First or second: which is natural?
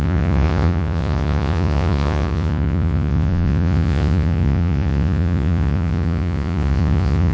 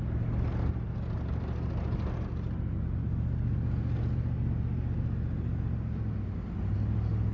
second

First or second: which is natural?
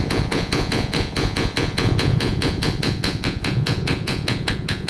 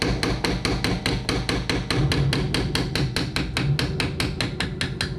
second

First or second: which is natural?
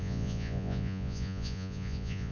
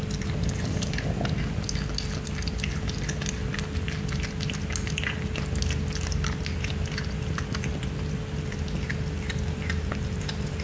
second